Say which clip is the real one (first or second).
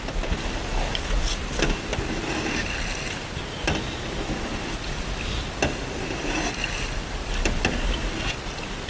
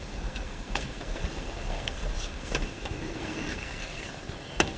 first